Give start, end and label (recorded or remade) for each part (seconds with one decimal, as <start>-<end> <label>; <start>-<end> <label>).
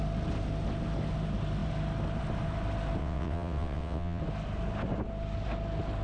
0.0-3.0 recorded; 3.0-4.2 remade; 4.2-6.0 recorded